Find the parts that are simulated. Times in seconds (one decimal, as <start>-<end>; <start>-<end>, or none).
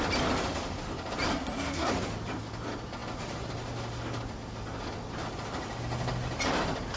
1.3-1.9